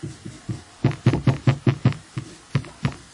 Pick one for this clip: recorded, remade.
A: recorded